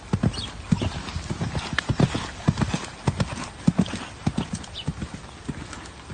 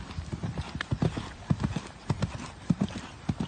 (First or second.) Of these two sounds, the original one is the first